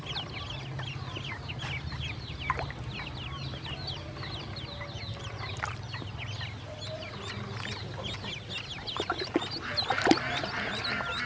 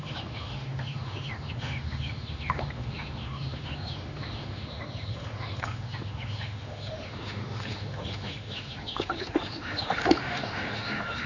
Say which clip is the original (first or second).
first